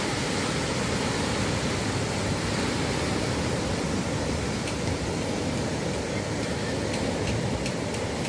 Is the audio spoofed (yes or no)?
no